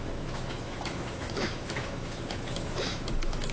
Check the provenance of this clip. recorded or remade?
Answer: remade